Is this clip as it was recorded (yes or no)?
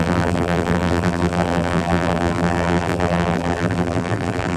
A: no